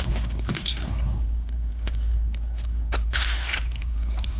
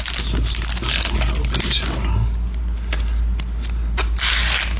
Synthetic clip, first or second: first